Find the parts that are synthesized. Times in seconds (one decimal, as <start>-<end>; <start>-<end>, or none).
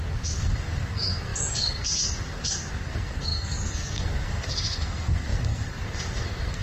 0.0-6.6